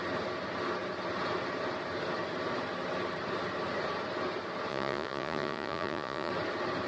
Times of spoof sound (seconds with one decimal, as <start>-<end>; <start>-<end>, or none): 4.7-6.3